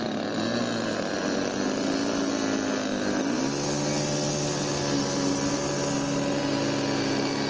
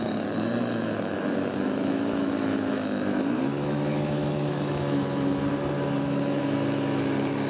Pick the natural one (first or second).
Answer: first